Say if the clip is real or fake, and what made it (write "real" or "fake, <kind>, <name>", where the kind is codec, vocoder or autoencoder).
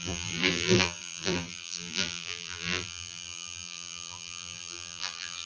fake, vocoder, BigVGAN v2